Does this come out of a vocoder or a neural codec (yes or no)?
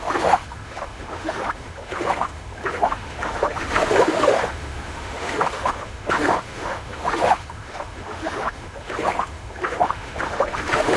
yes